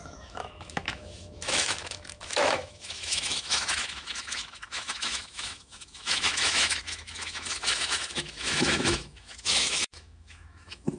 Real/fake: fake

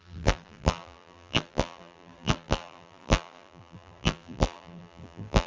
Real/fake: fake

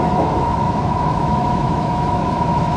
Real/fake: fake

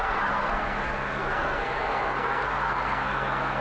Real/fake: fake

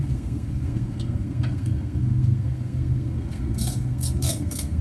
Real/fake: fake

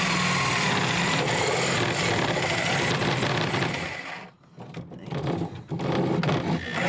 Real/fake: real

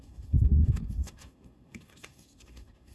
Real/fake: fake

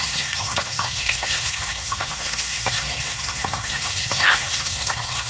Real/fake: fake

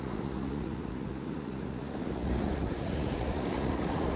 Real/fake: fake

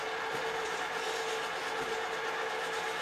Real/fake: real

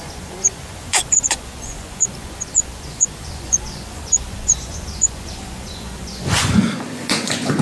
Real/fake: fake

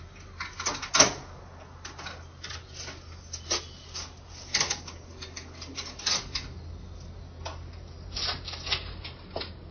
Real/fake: real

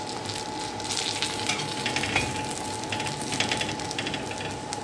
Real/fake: real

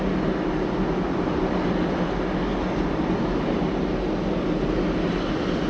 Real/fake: real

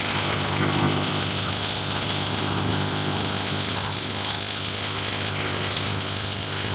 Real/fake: fake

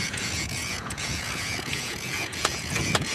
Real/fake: fake